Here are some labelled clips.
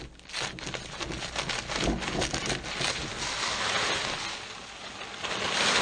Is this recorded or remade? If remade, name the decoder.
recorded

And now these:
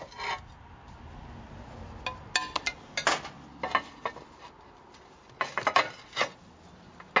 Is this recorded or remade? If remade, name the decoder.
recorded